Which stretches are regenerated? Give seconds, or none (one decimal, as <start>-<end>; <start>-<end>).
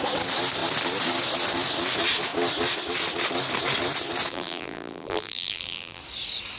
4.3-6.0